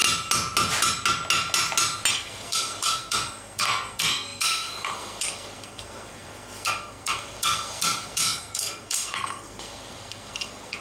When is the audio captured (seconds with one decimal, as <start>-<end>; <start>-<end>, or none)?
0.0-2.1